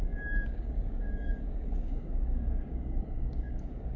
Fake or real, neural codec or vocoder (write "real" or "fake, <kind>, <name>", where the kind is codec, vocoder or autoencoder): fake, codec, DAC